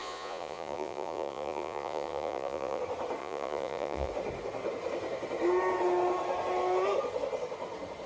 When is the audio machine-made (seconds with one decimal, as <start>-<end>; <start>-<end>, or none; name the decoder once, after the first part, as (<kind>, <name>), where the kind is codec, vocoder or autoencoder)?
0.0-2.8 (vocoder, Vocos); 3.2-4.1